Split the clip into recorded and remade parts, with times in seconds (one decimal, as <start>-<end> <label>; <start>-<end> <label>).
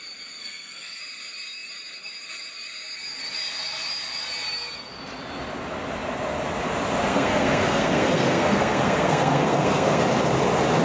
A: 0.0-0.4 recorded; 0.4-1.0 remade; 1.0-7.1 recorded; 7.1-10.0 remade; 10.0-10.8 recorded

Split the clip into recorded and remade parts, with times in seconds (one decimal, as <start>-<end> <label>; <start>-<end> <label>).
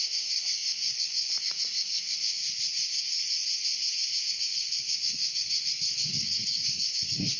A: 0.0-2.4 remade; 2.4-4.3 recorded; 4.3-7.4 remade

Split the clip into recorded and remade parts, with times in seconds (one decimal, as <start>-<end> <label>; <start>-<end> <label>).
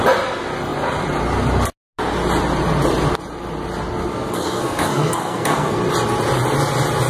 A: 0.0-4.1 recorded; 4.1-5.8 remade; 5.8-7.1 recorded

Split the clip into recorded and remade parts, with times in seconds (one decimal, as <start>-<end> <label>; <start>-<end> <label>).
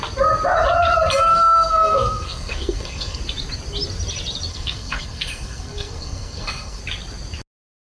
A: 0.0-1.3 recorded; 1.3-3.2 remade; 3.2-4.5 recorded; 4.5-6.8 remade; 6.8-7.8 recorded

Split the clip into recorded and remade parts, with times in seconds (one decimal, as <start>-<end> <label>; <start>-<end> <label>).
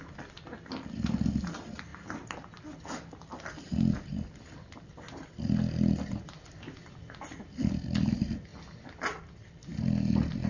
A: 0.0-10.5 recorded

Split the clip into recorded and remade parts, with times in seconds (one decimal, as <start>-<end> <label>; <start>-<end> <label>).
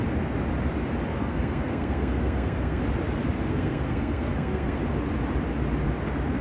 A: 0.0-1.1 recorded; 1.1-2.8 remade; 2.8-3.5 recorded; 3.5-4.8 remade; 4.8-6.4 recorded